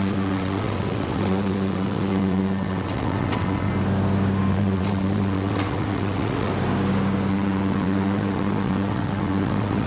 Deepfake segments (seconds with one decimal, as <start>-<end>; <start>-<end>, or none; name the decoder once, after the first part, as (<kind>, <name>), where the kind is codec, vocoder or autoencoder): 0.0-3.7 (vocoder, WaveNeXt); 4.5-6.5; 7.3-9.9